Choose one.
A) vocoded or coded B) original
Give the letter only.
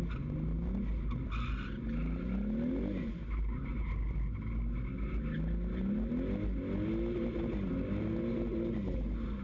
B